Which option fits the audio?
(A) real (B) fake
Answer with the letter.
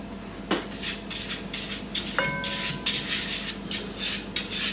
A